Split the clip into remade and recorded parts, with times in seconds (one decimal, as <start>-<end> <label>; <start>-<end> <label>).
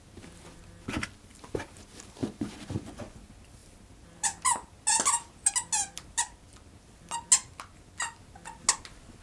0.0-2.2 recorded; 2.2-3.2 remade; 3.2-9.2 recorded